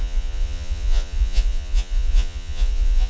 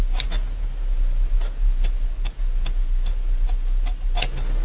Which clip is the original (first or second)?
second